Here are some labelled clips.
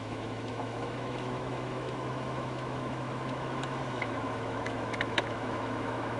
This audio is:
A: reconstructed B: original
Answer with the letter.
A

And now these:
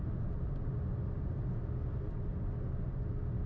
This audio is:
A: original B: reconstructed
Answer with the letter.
A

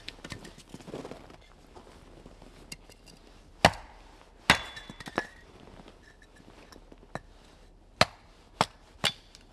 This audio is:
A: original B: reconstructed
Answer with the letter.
A